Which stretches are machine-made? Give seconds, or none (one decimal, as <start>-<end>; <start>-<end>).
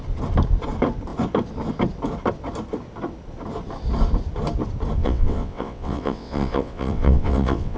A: 5.0-7.8